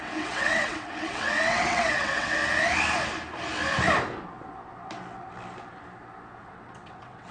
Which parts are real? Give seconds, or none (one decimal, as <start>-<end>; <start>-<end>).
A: 2.4-6.4